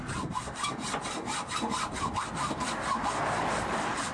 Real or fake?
real